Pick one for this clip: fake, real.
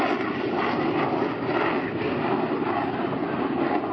real